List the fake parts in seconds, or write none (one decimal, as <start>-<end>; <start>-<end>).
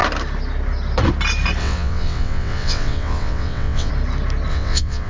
1.6-3.9; 4.5-5.1